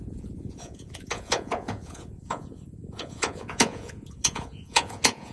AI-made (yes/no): yes